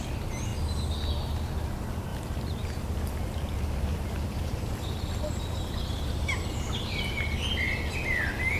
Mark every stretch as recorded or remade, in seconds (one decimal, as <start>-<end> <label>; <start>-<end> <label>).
0.0-2.1 recorded; 2.1-6.8 remade; 6.8-8.6 recorded